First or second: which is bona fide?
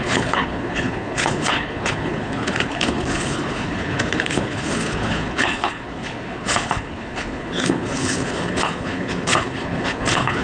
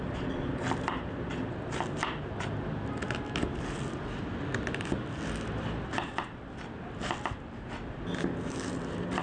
second